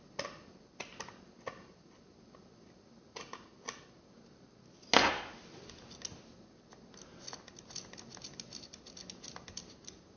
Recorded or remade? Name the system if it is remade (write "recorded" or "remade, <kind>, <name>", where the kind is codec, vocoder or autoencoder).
recorded